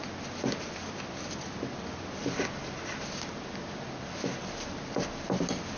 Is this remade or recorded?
recorded